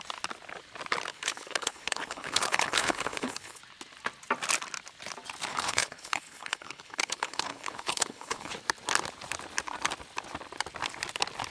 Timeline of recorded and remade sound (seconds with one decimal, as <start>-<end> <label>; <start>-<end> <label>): 0.0-1.1 recorded; 1.1-3.6 remade; 3.6-5.5 recorded; 5.5-8.5 remade; 8.5-11.5 recorded